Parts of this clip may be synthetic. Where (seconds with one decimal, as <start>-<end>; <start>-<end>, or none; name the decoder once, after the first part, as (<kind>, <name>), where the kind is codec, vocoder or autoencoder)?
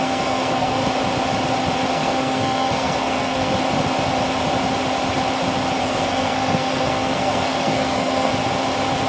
0.0-0.8 (codec, SNAC); 1.9-3.5; 5.8-8.3